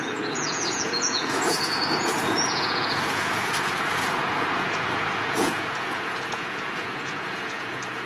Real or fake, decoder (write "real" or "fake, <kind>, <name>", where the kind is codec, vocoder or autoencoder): fake, vocoder, Vocos